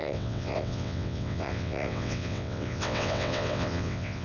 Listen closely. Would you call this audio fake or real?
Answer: fake